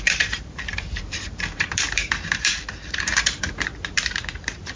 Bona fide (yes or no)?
no